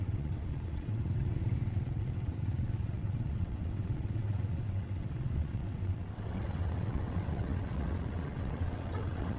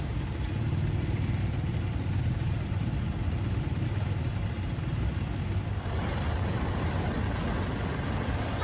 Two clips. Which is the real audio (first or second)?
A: second